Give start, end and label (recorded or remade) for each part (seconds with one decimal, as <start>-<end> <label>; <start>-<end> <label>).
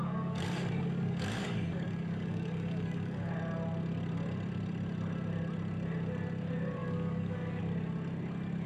0.0-3.3 remade; 3.3-6.8 recorded; 6.8-7.6 remade; 7.6-8.7 recorded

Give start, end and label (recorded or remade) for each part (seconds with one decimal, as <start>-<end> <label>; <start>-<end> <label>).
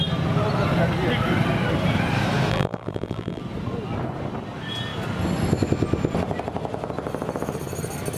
0.0-2.5 recorded; 2.5-3.4 remade; 3.4-8.2 recorded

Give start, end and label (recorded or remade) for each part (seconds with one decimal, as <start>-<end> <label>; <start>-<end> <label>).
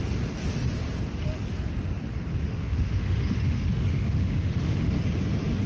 0.0-2.4 recorded; 2.4-4.9 remade; 4.9-5.7 recorded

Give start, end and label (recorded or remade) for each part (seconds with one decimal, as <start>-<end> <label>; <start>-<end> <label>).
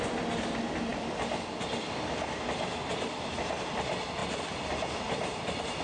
0.0-5.8 recorded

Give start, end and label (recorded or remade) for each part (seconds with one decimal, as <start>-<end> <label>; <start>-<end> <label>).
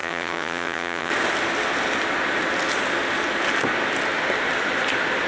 0.0-1.1 remade; 1.1-5.3 recorded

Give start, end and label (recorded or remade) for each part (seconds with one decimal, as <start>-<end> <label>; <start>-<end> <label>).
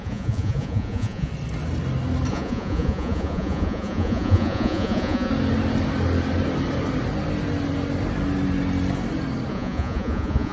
0.0-1.3 remade; 1.3-2.3 recorded; 2.3-5.3 remade; 5.3-9.5 recorded; 9.5-10.5 remade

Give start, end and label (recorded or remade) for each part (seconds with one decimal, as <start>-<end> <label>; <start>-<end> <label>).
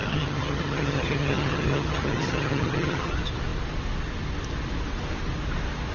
0.0-3.1 remade; 3.1-5.9 recorded